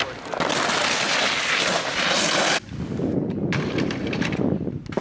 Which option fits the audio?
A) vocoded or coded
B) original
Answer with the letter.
B